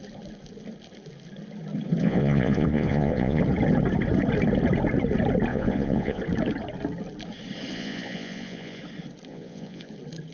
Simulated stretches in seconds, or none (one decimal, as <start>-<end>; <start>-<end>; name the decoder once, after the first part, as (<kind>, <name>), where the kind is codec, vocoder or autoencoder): 2.0-3.4 (vocoder, Vocos); 5.5-6.2; 7.7-8.8; 9.3-9.9